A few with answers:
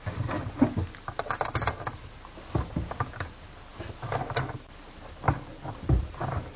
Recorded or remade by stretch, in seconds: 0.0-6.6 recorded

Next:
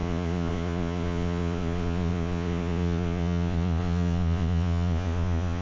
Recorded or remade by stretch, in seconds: 0.0-5.6 remade